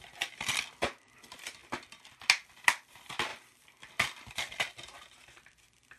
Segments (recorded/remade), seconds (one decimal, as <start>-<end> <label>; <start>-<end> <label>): 0.0-6.0 recorded